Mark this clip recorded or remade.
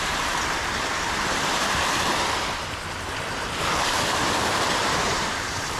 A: remade